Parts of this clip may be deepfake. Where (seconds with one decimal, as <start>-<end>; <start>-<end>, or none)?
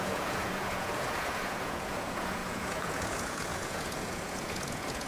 0.0-5.1